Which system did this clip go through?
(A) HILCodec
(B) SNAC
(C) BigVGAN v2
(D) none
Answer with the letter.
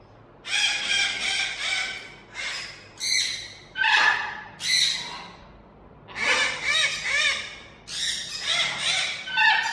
D